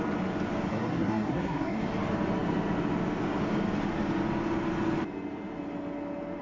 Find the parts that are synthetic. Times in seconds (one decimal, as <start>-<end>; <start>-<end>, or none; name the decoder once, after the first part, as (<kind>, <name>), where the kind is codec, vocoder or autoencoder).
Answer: 0.7-1.8 (codec, SNAC)